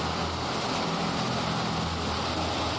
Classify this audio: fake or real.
real